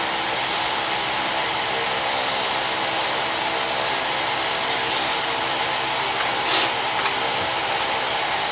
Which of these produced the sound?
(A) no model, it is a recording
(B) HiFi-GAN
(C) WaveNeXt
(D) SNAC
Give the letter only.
A